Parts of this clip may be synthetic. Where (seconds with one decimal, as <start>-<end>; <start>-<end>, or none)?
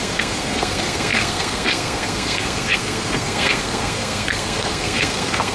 0.0-5.5